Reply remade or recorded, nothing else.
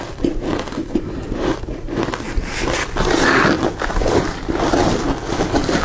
remade